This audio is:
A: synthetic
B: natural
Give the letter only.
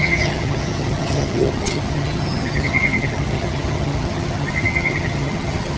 A